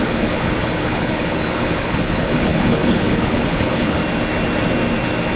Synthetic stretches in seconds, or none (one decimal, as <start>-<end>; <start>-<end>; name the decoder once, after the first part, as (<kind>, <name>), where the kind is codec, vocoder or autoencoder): 0.0-4.0 (codec, HILCodec)